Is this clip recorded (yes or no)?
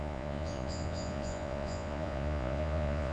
no